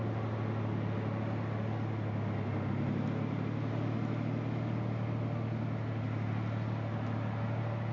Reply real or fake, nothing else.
real